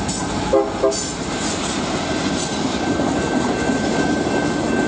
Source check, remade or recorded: recorded